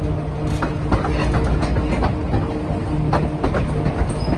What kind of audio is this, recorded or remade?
recorded